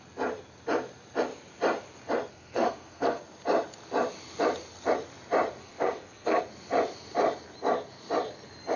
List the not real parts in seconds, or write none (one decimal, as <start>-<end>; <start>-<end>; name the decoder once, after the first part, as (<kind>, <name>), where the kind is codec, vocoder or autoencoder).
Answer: 2.3-3.2 (codec, SNAC); 5.6-6.4